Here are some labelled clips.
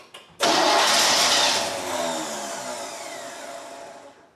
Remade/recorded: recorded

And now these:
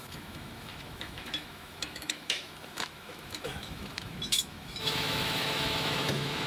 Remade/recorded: remade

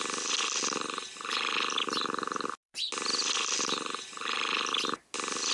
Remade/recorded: recorded